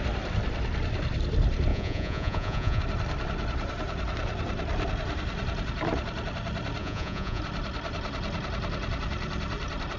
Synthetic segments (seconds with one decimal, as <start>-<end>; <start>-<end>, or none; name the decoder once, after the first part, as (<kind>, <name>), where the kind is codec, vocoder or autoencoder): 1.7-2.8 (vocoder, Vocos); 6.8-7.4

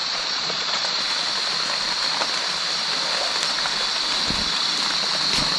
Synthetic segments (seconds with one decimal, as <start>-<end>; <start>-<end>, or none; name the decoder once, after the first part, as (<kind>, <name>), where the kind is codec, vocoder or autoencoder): 0.0-1.0 (vocoder, Vocos)

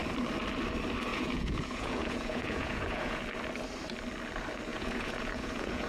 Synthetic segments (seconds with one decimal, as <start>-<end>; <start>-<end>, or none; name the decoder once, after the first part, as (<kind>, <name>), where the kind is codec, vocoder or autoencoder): 1.1-3.2 (vocoder, Vocos); 4.7-5.9